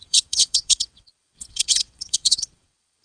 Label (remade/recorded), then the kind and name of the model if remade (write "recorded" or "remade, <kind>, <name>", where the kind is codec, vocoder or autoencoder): remade, vocoder, WaveNeXt